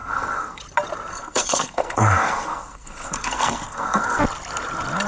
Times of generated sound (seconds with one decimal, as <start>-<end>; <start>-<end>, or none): 0.0-0.6; 1.1-4.2